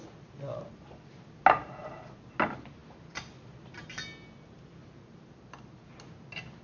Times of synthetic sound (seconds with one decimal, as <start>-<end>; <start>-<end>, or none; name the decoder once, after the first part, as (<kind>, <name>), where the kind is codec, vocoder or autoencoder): none